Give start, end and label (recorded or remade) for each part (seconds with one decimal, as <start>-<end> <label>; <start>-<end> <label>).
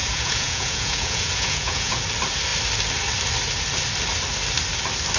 0.0-2.0 remade; 2.0-5.2 recorded